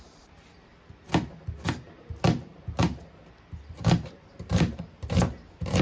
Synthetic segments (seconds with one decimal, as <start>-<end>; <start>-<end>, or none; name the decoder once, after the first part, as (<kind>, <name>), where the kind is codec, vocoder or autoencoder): 0.0-0.7 (vocoder, BigVGAN v2); 3.7-5.8